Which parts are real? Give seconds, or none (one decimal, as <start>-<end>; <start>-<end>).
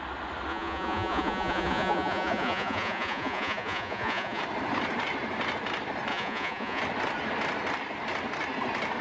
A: 0.0-0.5; 4.4-6.1; 6.8-9.0